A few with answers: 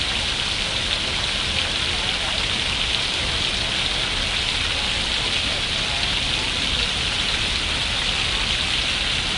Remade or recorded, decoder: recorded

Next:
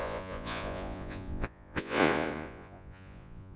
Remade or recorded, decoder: remade, vocoder, Vocos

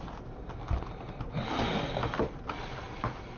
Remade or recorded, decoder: recorded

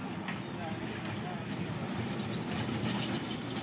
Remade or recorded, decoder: recorded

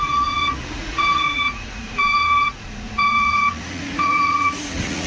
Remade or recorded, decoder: remade, vocoder, Vocos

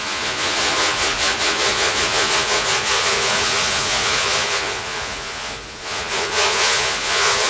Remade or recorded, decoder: remade, vocoder, Vocos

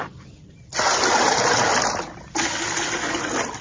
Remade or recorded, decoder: recorded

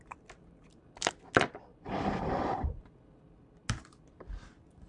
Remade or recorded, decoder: recorded